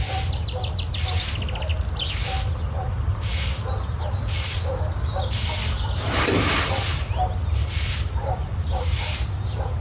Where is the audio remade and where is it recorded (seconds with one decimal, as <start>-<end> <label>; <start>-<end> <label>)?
0.0-9.8 recorded

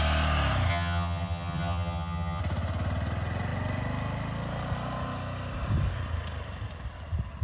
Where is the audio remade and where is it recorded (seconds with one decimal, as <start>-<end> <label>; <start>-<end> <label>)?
0.0-0.7 recorded; 0.7-2.4 remade; 2.4-7.4 recorded

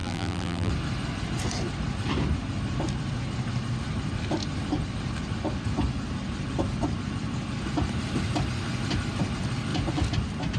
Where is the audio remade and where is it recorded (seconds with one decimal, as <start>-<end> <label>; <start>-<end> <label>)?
0.0-0.7 remade; 0.7-10.6 recorded